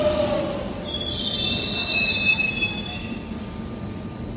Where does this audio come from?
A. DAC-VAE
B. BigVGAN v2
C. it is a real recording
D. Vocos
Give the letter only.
C